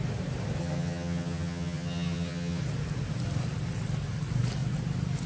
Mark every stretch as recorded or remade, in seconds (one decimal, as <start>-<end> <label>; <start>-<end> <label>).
0.0-0.6 recorded; 0.6-2.6 remade; 2.6-5.3 recorded

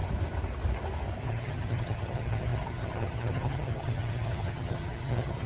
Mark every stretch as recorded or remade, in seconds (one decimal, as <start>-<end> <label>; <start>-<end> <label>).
0.0-1.2 recorded; 1.2-5.5 remade

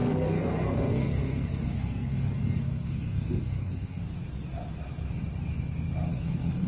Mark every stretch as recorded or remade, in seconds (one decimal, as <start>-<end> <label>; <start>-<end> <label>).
0.0-4.0 remade; 4.0-6.1 recorded; 6.1-6.7 remade

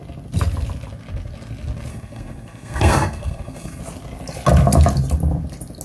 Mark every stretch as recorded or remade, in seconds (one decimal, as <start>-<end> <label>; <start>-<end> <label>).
0.0-1.9 recorded; 1.9-3.8 remade; 3.8-5.8 recorded

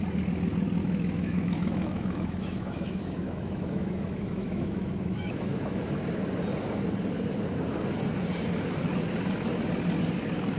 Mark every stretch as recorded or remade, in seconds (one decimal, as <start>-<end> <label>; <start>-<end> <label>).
0.0-0.8 recorded; 0.8-5.9 remade; 5.9-10.6 recorded

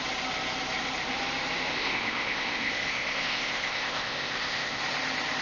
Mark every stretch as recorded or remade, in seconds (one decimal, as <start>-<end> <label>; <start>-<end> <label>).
0.0-1.7 recorded; 1.7-4.8 remade; 4.8-5.4 recorded